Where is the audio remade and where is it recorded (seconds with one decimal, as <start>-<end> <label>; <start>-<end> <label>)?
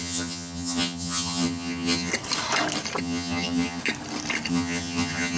0.0-2.1 remade; 2.1-3.0 recorded; 3.0-3.8 remade; 3.8-4.5 recorded; 4.5-5.4 remade